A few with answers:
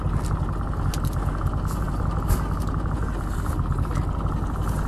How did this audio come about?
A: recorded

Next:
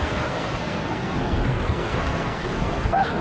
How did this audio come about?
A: remade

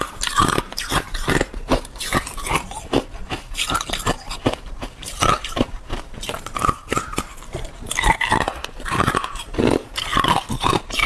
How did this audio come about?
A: remade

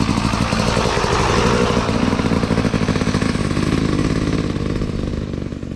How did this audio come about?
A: recorded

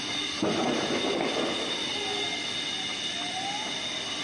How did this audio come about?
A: recorded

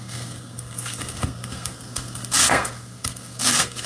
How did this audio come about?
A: remade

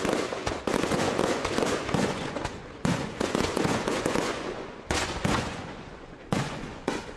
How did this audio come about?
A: remade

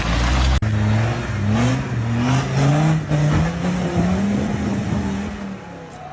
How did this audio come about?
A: recorded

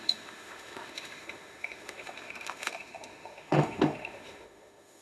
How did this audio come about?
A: remade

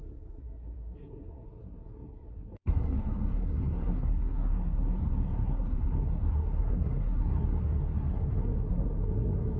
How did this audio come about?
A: remade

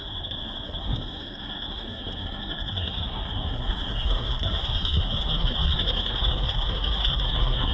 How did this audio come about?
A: remade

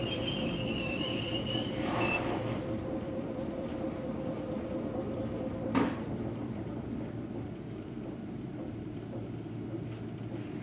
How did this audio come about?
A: remade